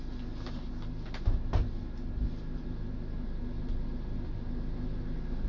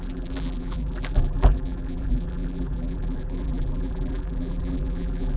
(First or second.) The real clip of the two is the first